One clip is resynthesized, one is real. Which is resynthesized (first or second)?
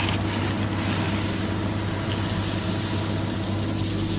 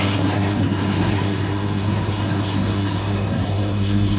second